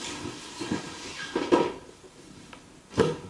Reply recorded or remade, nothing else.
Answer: recorded